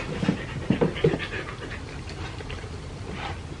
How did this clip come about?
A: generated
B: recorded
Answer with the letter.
B